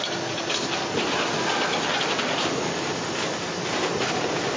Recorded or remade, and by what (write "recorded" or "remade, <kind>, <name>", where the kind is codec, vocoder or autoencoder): recorded